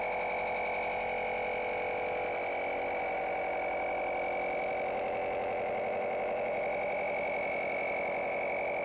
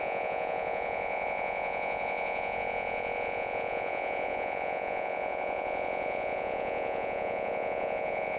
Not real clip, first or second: second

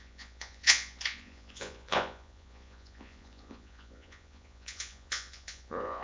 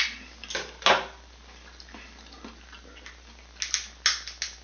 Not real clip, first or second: first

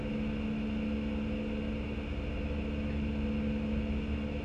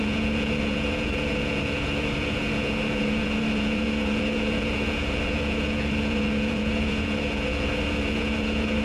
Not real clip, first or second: second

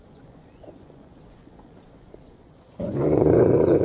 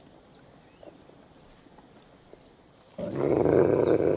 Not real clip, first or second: first